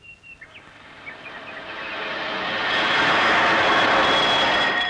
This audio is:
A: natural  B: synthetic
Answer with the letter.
A